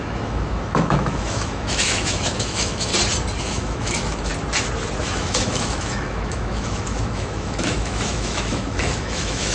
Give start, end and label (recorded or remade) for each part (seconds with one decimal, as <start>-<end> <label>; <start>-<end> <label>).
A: 0.0-2.9 remade; 2.9-3.4 recorded; 3.4-4.3 remade; 4.3-5.0 recorded; 5.0-9.5 remade